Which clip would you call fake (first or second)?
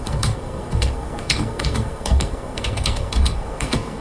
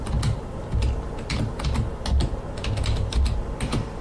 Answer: first